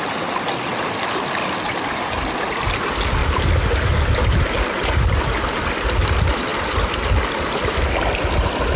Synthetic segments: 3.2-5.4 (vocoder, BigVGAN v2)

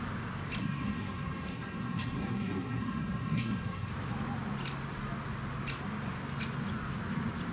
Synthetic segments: 0.6-3.9 (codec, SNAC)

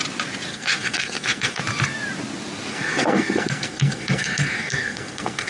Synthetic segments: 0.5-1.6 (codec, SNAC); 2.7-5.5

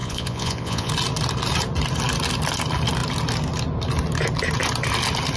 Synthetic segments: 0.0-0.9 (vocoder, Vocos)

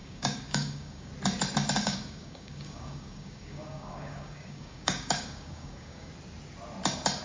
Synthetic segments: 0.0-1.1 (codec, DAC); 1.8-6.1

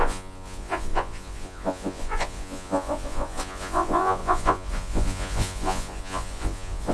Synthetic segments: 0.0-6.9 (vocoder, Vocos)

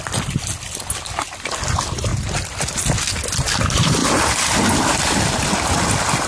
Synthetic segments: none

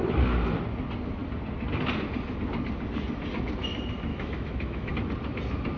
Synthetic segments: 4.1-4.9 (autoencoder, DAC-VAE)